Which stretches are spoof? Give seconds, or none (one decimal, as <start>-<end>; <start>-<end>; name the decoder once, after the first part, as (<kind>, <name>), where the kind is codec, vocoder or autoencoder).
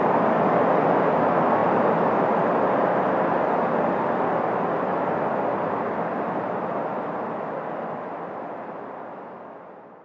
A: none